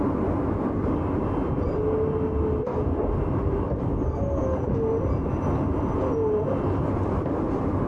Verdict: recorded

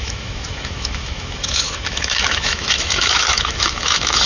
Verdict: remade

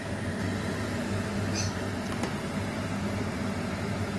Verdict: recorded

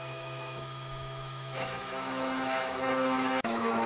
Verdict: remade